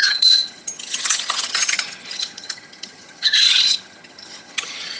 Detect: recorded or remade remade